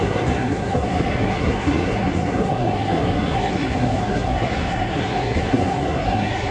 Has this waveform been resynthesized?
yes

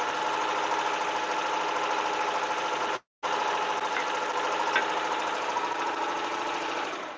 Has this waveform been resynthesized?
no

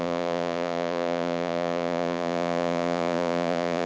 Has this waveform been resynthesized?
yes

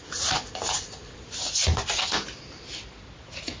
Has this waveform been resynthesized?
no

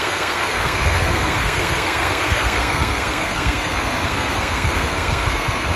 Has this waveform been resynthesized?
yes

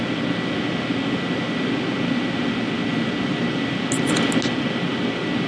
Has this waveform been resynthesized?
no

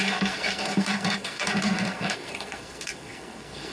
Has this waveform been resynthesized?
yes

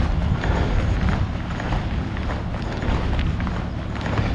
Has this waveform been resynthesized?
no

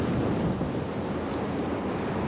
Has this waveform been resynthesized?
no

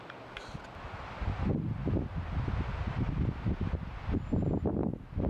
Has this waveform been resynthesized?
no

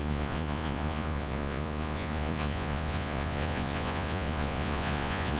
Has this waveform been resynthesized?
yes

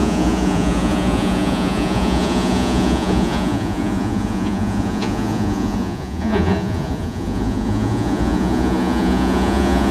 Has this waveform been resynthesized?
yes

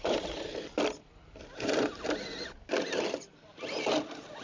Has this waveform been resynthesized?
no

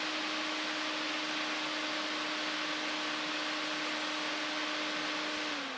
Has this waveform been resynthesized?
no